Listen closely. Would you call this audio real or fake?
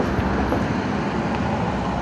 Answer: real